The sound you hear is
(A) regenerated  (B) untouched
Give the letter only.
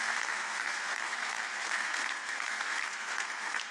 A